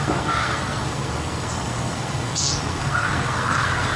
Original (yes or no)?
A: no